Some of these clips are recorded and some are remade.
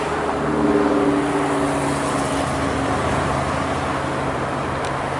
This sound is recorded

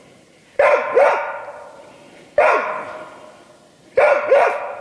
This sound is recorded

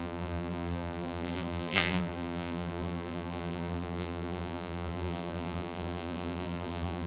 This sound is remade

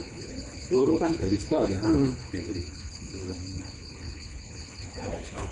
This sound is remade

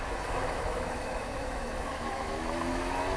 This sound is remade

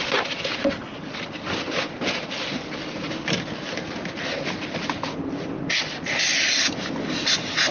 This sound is recorded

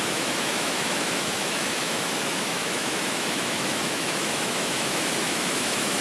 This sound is remade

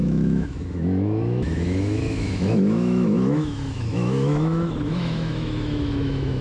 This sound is remade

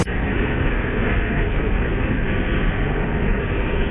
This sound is remade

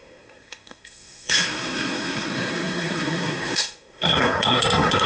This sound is remade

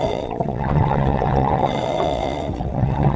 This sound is remade